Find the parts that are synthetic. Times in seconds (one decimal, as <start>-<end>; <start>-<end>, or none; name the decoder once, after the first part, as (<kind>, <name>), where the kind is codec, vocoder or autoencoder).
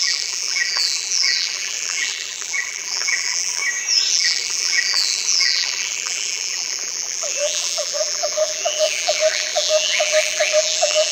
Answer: 0.0-3.6 (vocoder, BigVGAN v2); 4.1-11.1